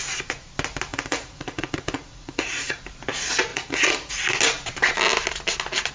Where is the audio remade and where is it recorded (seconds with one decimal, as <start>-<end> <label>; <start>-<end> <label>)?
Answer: 0.0-0.9 recorded; 0.9-2.8 remade; 2.8-3.5 recorded; 3.5-4.1 remade; 4.1-5.9 recorded